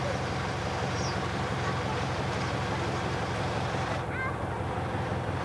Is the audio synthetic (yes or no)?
no